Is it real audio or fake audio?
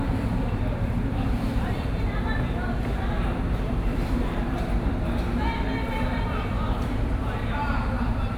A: fake